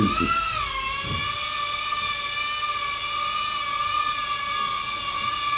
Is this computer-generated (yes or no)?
no